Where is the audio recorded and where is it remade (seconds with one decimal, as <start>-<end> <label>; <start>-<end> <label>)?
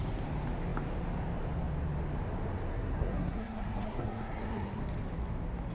0.0-2.7 recorded; 2.7-4.8 remade; 4.8-5.7 recorded